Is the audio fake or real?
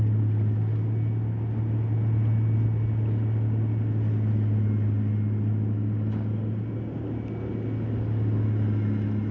real